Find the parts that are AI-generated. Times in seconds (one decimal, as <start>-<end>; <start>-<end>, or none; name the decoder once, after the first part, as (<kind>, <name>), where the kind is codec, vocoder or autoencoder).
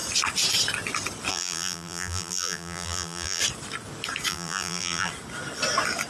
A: 1.3-3.4 (vocoder, BigVGAN v2); 4.3-5.1